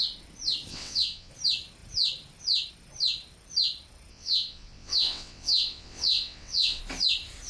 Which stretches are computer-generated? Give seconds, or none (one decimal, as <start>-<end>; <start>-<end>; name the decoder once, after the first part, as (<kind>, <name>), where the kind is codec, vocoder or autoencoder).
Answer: 0.7-1.3 (vocoder, WaveNeXt); 4.1-6.8